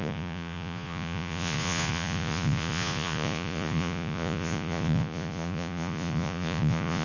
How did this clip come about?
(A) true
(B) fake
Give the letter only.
B